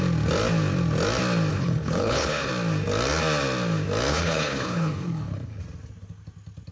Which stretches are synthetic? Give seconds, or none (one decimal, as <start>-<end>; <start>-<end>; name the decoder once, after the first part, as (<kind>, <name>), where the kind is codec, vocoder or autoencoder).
1.5-2.5 (codec, HILCodec); 4.1-5.6